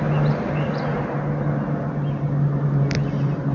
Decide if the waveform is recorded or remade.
recorded